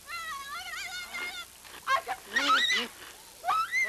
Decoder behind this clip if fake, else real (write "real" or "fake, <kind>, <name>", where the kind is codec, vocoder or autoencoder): real